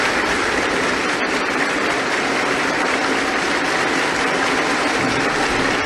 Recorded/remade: recorded